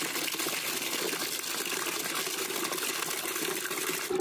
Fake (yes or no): no